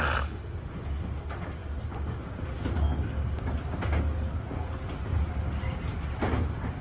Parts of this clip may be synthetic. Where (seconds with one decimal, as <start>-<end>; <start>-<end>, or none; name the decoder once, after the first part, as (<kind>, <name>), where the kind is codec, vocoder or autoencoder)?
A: none